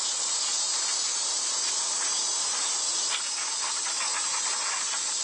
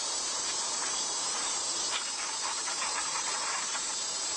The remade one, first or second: second